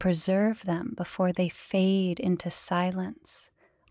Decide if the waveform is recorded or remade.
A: recorded